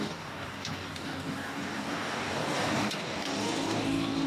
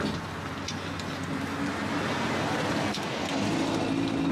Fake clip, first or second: first